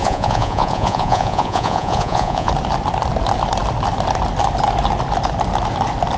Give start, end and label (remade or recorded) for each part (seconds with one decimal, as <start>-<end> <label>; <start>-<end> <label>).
0.0-2.5 remade; 2.5-6.2 recorded